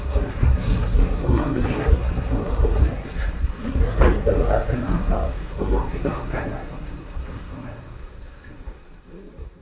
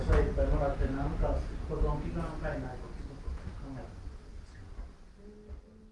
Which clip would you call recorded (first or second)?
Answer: second